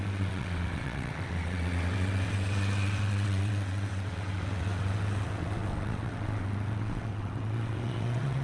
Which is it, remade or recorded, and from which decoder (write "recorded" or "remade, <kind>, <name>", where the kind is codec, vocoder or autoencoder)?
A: remade, vocoder, WaveNeXt